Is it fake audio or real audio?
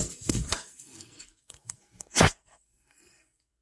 fake